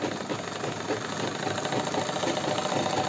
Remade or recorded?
recorded